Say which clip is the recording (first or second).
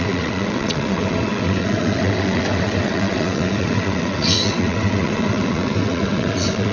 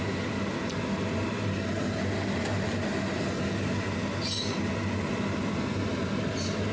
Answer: second